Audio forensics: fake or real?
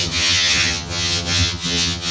fake